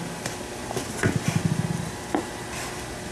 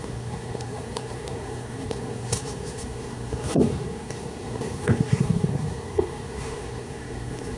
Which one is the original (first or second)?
first